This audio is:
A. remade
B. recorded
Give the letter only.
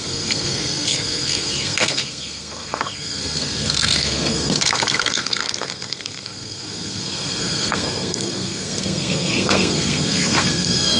A